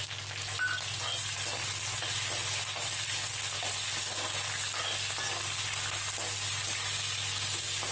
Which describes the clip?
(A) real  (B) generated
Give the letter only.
A